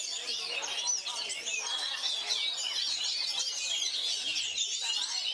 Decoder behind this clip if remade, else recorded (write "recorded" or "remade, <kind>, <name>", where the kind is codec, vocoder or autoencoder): recorded